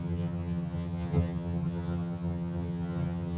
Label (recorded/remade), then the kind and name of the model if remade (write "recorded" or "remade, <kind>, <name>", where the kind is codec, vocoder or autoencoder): remade, vocoder, HiFi-GAN